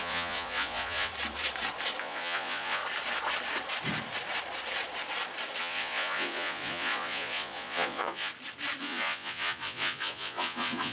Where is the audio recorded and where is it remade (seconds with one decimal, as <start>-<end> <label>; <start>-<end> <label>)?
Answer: 0.0-1.1 remade; 1.1-2.0 recorded; 2.0-2.8 remade; 2.8-5.6 recorded; 5.6-8.3 remade; 8.3-8.8 recorded; 8.8-10.9 remade